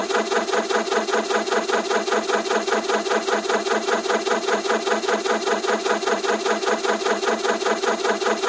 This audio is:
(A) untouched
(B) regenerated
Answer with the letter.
A